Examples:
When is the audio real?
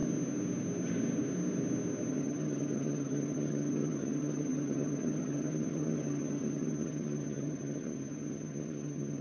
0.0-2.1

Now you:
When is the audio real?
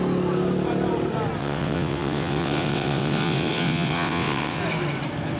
0.0-1.4; 4.6-5.4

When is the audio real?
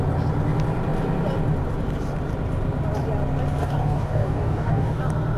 0.0-3.6; 5.0-5.4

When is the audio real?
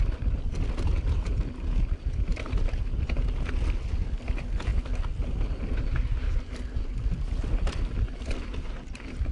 0.0-9.3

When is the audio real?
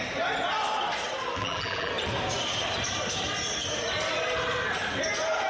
0.0-1.4; 1.9-5.5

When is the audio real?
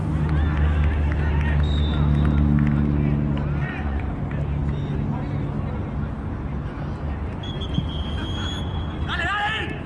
0.0-3.6; 4.1-9.9